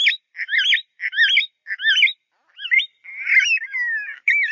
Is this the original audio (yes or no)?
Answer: yes